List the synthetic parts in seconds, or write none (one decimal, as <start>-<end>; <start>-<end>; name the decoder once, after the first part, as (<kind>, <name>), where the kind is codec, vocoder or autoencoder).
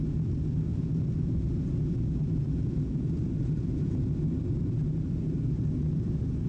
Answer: 0.7-4.0 (vocoder, Vocos)